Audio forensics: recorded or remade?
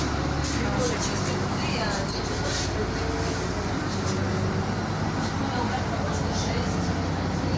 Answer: recorded